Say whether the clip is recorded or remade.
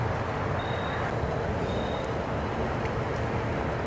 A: recorded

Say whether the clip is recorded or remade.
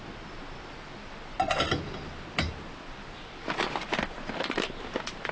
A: recorded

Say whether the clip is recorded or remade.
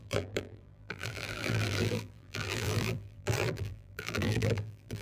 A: remade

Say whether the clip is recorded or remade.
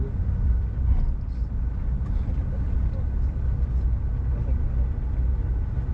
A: recorded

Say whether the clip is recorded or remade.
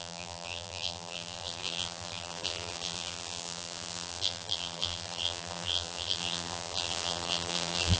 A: remade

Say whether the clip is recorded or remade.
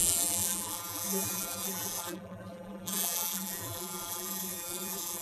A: remade